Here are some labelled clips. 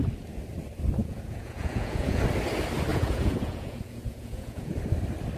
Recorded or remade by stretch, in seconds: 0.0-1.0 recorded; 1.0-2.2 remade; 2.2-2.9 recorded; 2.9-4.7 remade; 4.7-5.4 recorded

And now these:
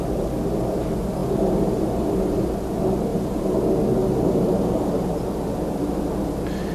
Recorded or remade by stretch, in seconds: 0.0-1.2 recorded; 1.2-2.5 remade; 2.5-3.1 recorded; 3.1-3.6 remade; 3.6-4.0 recorded; 4.0-5.1 remade; 5.1-6.7 recorded